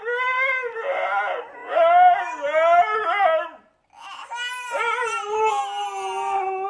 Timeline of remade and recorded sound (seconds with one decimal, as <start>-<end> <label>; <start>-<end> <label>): 0.0-6.7 recorded